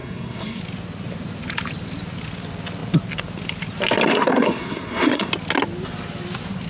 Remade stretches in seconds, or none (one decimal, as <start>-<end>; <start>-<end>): 0.0-0.6; 4.1-5.3